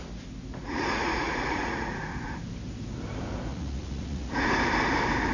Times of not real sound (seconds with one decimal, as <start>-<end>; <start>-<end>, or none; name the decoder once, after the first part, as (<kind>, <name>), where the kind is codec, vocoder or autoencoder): 0.6-2.4 (vocoder, Vocos); 3.5-4.5